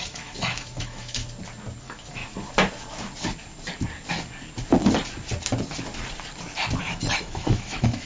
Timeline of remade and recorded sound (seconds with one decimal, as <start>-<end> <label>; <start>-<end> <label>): 0.0-1.2 remade; 1.2-1.8 recorded; 1.8-2.2 remade; 2.2-6.8 recorded; 6.8-8.1 remade